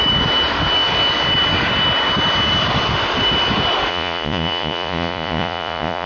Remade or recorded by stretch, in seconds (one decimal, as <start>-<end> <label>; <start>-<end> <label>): 0.0-3.9 recorded; 3.9-6.1 remade